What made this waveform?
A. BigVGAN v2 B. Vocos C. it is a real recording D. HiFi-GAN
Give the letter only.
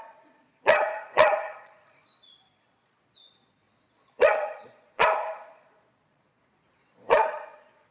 B